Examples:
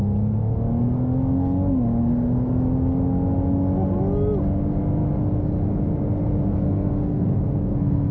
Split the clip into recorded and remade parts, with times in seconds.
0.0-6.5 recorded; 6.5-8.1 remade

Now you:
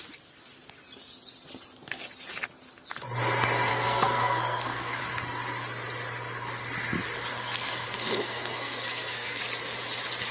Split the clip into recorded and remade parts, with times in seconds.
0.0-3.7 recorded; 3.7-5.0 remade; 5.0-7.3 recorded; 7.3-9.4 remade; 9.4-10.3 recorded

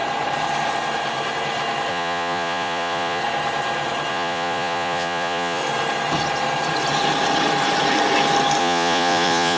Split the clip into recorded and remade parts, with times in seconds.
0.0-1.9 recorded; 1.9-3.2 remade; 3.2-4.1 recorded; 4.1-5.6 remade; 5.6-8.6 recorded; 8.6-9.6 remade